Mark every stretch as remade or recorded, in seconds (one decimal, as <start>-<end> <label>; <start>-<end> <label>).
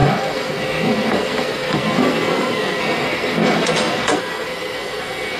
0.0-5.4 remade